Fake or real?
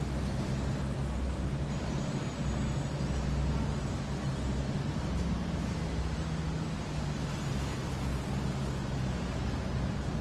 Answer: real